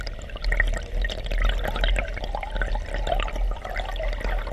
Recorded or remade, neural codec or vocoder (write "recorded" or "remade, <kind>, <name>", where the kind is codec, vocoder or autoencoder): recorded